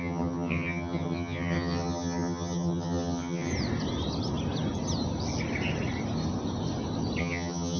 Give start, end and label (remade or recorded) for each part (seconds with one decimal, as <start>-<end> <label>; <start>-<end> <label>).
0.0-3.5 remade; 3.5-7.2 recorded; 7.2-7.8 remade